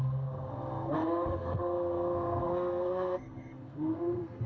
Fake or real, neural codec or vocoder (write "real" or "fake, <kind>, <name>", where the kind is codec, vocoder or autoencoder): fake, codec, SNAC